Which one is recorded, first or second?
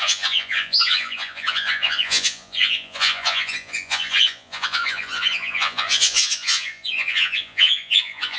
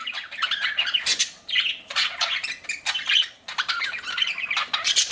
second